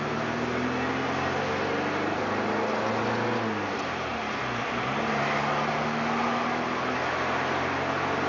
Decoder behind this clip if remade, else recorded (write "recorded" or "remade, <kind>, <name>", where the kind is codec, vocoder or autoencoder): recorded